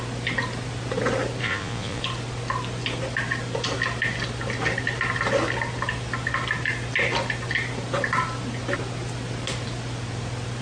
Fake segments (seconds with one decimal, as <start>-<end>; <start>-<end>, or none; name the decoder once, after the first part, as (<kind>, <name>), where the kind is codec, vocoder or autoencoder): 1.4-2.0 (vocoder, Vocos)